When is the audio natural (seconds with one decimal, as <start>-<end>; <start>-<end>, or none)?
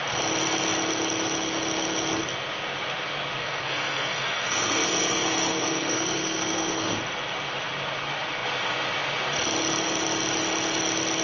0.0-3.4; 7.0-11.2